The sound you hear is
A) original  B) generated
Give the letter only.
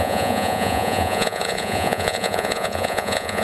B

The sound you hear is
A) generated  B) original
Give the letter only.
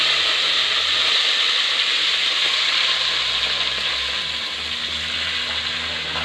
B